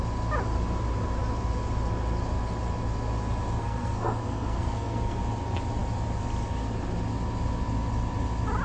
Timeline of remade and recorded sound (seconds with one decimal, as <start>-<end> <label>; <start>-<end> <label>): 0.0-3.6 recorded; 3.6-5.2 remade; 5.2-8.6 recorded